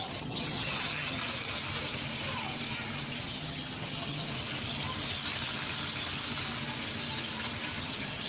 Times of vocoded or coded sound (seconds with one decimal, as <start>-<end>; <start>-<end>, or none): 0.0-1.2; 3.2-4.3; 7.8-8.3